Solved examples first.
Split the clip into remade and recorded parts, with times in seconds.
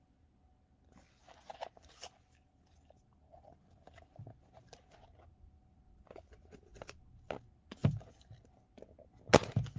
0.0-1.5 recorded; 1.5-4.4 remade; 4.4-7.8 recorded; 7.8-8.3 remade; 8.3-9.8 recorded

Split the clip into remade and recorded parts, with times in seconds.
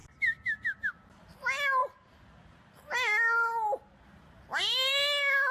0.0-5.5 recorded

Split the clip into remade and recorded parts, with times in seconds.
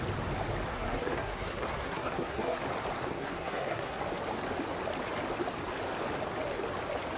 0.0-0.7 recorded; 0.7-2.6 remade; 2.6-3.1 recorded; 3.1-4.0 remade; 4.0-7.2 recorded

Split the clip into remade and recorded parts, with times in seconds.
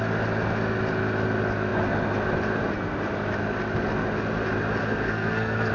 0.0-4.8 recorded; 4.8-5.7 remade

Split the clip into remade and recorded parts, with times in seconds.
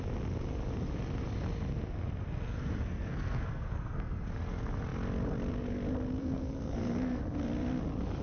0.0-1.7 recorded; 1.7-4.3 remade; 4.3-6.2 recorded; 6.2-7.2 remade; 7.2-8.2 recorded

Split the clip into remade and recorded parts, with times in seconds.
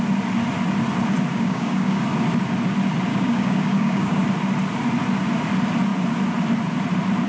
0.0-1.3 recorded; 1.3-2.0 remade; 2.0-3.1 recorded; 3.1-4.2 remade; 4.2-7.3 recorded